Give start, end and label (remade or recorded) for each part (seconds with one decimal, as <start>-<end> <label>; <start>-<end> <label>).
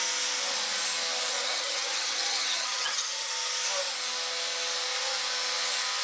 0.0-1.3 recorded; 1.3-3.3 remade; 3.3-6.0 recorded